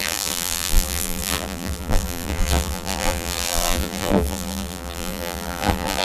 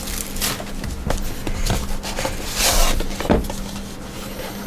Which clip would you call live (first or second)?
second